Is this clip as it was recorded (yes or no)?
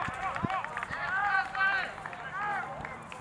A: yes